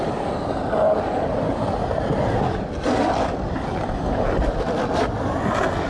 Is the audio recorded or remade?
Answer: recorded